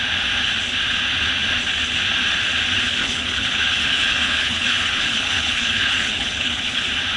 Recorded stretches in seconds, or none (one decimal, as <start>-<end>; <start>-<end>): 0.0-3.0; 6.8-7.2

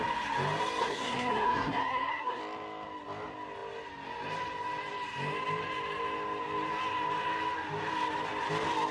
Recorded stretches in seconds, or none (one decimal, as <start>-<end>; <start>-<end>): 0.0-0.8; 2.4-8.9

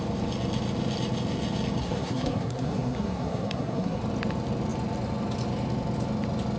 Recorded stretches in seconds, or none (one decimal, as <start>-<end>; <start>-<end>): 0.0-1.8; 4.0-6.6

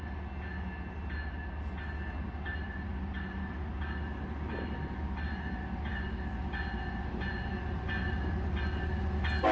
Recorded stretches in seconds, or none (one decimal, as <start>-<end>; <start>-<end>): 0.0-2.9; 3.5-9.5

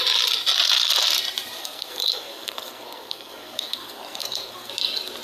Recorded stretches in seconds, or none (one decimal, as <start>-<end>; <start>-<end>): 0.0-1.6; 4.7-5.2

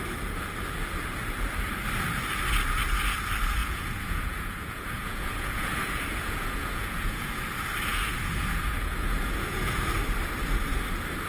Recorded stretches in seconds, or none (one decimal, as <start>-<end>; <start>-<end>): 0.0-3.6; 7.3-7.9; 9.9-11.3

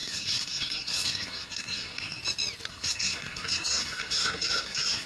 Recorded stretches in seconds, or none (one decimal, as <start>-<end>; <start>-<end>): 2.2-2.7